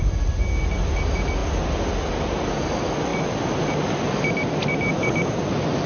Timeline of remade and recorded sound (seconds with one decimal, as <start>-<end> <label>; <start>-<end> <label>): 0.0-5.9 recorded